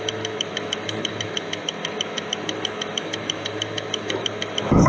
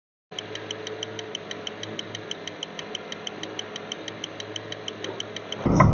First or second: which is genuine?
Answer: second